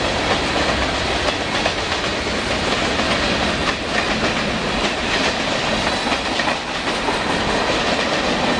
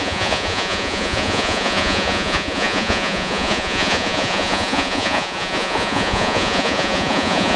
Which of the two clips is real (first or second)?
first